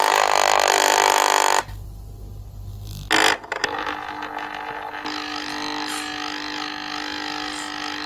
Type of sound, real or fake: real